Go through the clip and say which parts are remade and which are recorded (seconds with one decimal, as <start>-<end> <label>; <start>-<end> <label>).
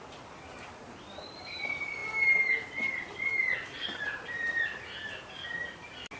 0.0-6.2 recorded